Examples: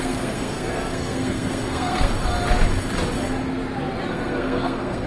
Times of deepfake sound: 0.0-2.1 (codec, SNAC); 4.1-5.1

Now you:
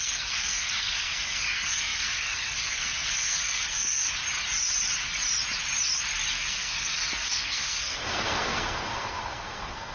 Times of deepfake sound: 0.0-4.0 (codec, SNAC); 6.3-9.9

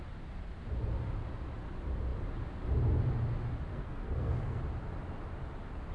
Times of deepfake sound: 3.7-4.6 (codec, SNAC)

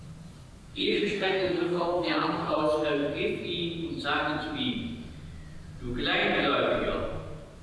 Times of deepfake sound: 0.6-2.6 (codec, SNAC)